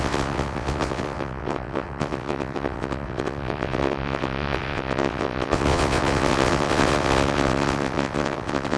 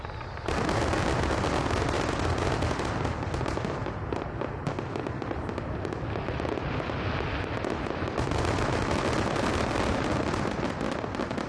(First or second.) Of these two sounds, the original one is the second